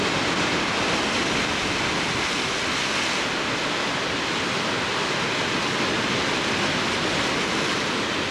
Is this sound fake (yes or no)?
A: no